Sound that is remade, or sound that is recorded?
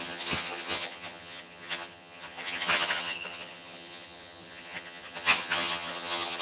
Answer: remade